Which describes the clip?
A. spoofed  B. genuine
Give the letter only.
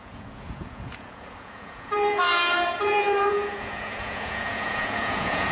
A